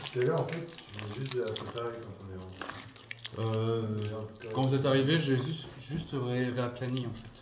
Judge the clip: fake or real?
real